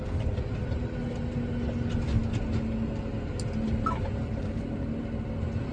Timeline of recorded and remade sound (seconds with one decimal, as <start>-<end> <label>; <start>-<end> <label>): 0.0-5.7 recorded